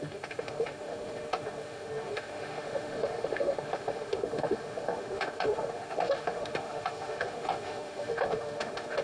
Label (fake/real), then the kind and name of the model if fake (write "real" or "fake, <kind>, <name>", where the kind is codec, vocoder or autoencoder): fake, autoencoder, DAC-VAE